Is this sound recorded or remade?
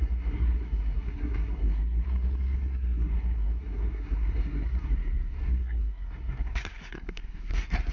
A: remade